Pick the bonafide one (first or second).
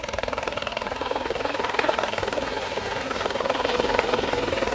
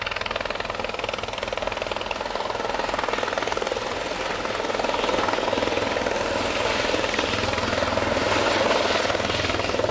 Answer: second